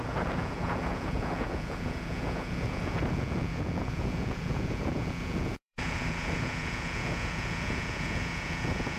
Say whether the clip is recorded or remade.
remade